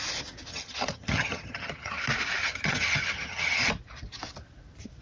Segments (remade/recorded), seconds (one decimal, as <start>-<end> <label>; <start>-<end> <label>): 0.0-0.5 recorded; 0.5-2.0 remade; 2.0-2.4 recorded; 2.4-3.7 remade; 3.7-5.0 recorded